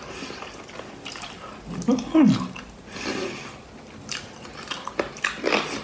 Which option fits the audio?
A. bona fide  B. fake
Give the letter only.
A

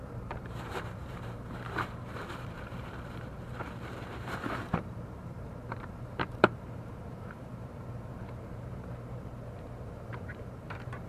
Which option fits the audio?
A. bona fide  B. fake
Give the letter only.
B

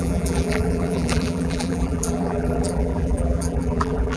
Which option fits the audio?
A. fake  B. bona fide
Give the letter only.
A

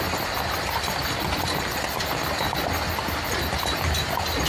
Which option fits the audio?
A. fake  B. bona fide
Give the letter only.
B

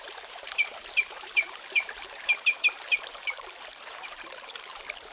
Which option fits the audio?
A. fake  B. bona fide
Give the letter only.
A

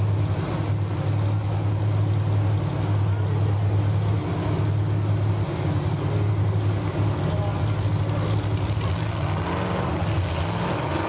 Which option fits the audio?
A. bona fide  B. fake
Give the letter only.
A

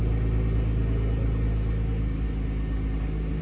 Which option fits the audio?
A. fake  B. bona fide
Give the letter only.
B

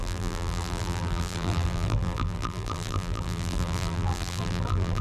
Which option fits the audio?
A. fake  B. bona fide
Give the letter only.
A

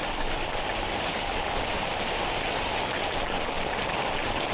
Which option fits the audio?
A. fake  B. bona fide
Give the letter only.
B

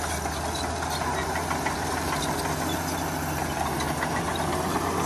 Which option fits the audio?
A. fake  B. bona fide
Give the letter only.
B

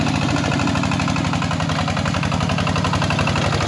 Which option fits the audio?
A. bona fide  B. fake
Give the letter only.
A